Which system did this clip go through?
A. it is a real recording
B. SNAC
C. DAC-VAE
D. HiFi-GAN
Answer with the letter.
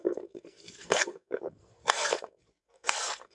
B